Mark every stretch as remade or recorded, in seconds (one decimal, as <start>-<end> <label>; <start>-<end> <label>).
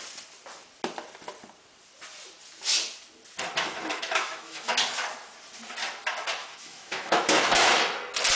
0.0-3.9 recorded; 3.9-4.7 remade; 4.7-6.4 recorded; 6.4-7.7 remade; 7.7-8.4 recorded